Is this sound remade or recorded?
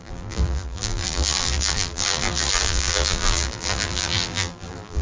remade